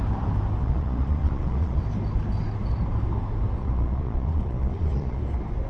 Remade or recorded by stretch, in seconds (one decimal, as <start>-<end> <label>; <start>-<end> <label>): 0.0-0.6 recorded; 0.6-1.8 remade; 1.8-3.6 recorded; 3.6-5.2 remade; 5.2-5.7 recorded